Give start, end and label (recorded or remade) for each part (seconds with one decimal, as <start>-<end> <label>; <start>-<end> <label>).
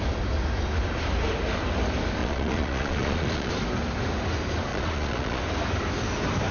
0.0-2.2 recorded; 2.2-3.5 remade; 3.5-4.7 recorded; 4.7-5.4 remade; 5.4-6.5 recorded